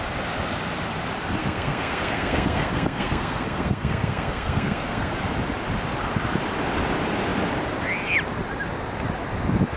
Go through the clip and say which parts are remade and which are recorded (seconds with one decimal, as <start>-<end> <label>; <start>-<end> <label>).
0.0-1.4 recorded; 1.4-5.1 remade; 5.1-9.8 recorded